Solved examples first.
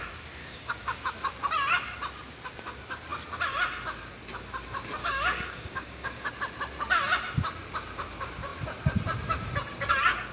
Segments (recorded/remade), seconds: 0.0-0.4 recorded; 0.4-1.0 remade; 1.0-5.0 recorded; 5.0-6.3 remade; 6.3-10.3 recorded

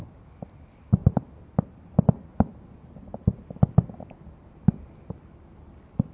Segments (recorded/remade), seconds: 0.0-6.1 recorded